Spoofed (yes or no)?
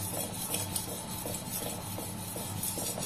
no